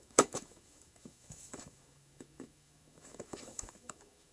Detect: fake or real fake